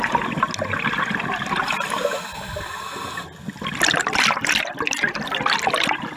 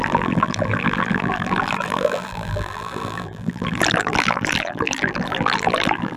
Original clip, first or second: first